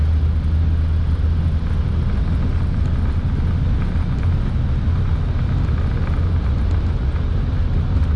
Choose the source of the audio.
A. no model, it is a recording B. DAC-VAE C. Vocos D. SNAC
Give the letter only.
A